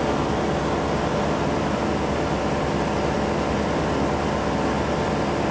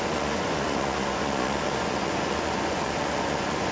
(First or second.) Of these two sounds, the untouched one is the first